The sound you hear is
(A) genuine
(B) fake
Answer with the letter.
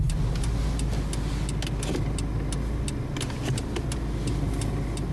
A